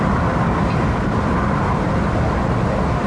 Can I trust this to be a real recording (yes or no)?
yes